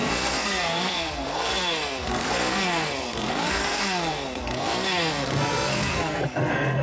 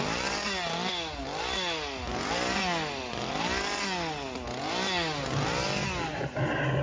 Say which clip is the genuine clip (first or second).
second